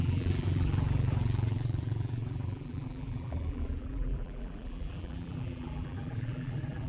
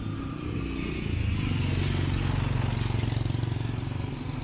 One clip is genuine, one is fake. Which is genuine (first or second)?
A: second